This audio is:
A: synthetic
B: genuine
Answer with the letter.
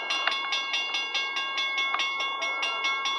B